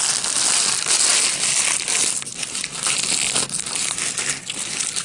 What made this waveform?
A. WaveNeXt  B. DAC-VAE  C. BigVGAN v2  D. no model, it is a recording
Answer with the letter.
D